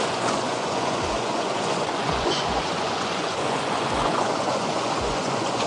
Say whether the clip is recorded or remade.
remade